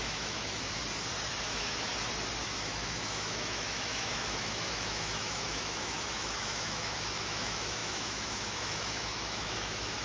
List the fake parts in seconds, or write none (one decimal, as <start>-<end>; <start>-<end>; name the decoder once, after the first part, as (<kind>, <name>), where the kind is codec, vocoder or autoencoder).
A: 0.0-0.8 (autoencoder, DAC-VAE); 1.4-1.9; 2.4-10.0